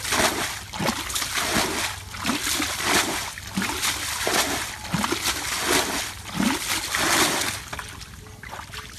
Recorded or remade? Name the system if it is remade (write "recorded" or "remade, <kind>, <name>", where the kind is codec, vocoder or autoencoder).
recorded